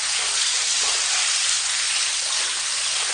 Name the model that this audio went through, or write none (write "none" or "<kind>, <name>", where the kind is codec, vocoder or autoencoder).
none